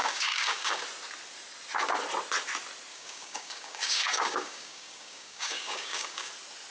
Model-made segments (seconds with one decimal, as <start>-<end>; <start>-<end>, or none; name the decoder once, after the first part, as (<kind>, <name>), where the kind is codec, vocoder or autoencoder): 0.0-0.8 (codec, DAC); 2.9-6.3